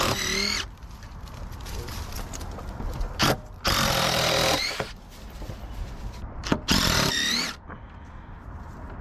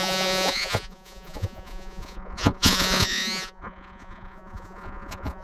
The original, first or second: first